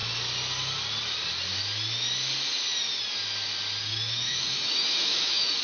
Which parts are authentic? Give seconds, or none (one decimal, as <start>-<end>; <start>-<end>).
0.0-3.8